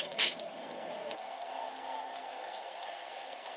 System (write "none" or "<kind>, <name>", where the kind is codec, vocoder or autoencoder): codec, SNAC